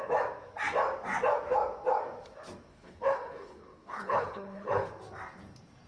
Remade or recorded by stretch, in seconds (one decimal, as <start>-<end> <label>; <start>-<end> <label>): 0.0-2.7 recorded; 2.7-4.9 remade; 4.9-5.9 recorded